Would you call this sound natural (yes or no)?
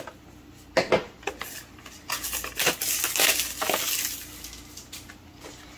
yes